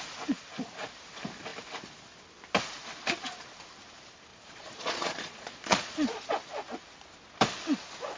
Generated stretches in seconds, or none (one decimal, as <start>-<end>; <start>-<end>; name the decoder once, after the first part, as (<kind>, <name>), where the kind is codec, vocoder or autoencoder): 4.3-6.3 (vocoder, Vocos)